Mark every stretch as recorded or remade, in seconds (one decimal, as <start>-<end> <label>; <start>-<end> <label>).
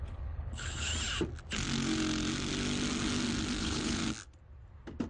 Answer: 0.0-0.9 remade; 0.9-3.6 recorded; 3.6-4.0 remade; 4.0-5.1 recorded